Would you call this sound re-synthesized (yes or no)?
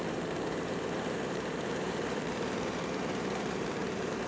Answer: yes